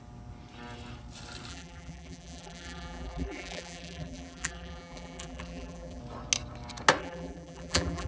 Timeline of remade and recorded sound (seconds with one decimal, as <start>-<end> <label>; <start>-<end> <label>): 0.0-1.5 recorded; 1.5-6.0 remade; 6.0-7.0 recorded; 7.0-8.1 remade